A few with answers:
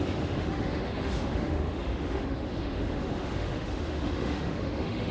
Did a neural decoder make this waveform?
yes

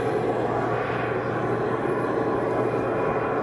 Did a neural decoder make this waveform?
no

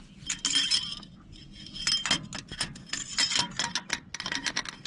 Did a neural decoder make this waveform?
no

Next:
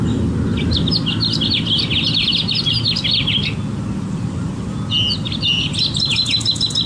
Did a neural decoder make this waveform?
no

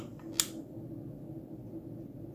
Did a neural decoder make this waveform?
no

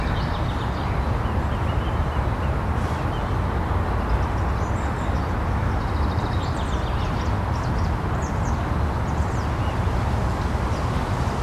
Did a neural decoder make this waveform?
no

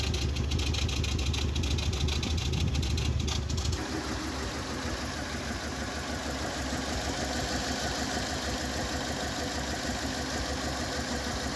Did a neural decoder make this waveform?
no